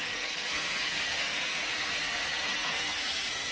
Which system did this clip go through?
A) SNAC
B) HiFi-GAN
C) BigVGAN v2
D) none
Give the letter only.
A